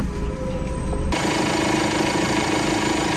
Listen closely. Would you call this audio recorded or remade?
recorded